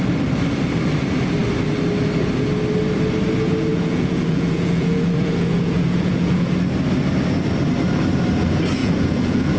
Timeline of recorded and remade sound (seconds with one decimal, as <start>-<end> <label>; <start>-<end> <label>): 0.0-3.7 recorded; 3.7-6.5 remade; 6.5-8.8 recorded; 8.8-9.6 remade